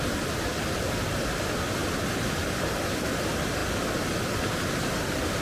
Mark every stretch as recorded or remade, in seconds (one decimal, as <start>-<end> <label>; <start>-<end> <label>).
0.0-5.4 recorded